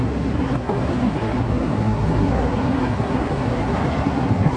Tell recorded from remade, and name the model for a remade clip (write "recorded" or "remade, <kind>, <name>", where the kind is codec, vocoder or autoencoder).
remade, codec, SNAC